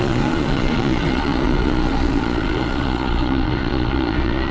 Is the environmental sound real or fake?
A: fake